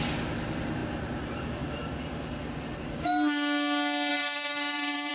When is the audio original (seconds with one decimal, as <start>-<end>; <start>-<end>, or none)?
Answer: 0.0-4.1